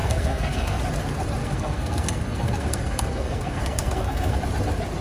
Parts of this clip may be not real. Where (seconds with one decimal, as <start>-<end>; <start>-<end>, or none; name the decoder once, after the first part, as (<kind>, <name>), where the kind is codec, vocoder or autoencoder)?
0.0-0.8 (codec, SNAC); 1.4-4.4